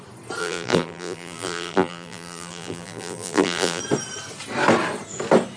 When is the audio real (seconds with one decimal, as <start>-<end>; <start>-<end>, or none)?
0.0-0.4; 3.8-5.6